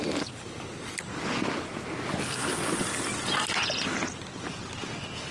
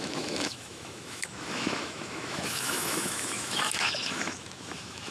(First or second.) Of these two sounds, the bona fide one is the first